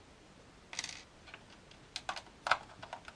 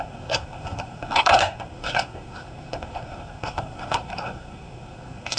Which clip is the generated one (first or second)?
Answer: second